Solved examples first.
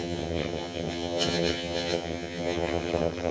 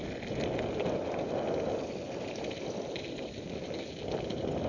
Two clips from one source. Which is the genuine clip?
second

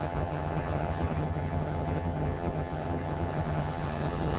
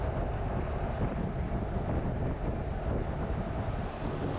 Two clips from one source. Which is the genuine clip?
second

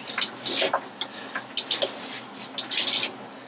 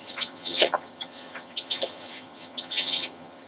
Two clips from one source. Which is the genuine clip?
first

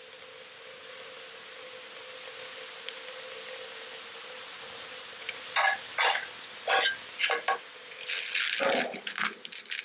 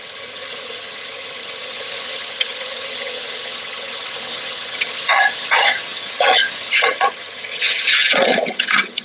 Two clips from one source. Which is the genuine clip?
first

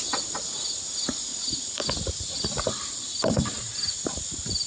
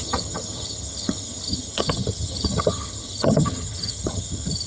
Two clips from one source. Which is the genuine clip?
first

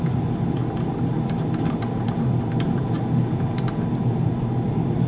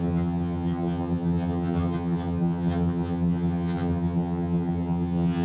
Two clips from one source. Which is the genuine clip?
first